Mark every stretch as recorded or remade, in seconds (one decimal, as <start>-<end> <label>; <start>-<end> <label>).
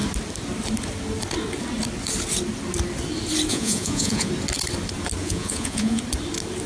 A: 0.0-3.5 recorded; 3.5-4.3 remade; 4.3-5.2 recorded; 5.2-6.0 remade; 6.0-6.7 recorded